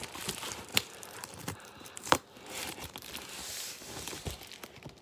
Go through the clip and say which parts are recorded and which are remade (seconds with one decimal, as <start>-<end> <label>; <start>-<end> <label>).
0.0-0.7 recorded; 0.7-3.3 remade; 3.3-5.0 recorded